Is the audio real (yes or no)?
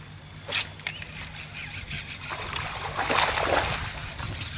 yes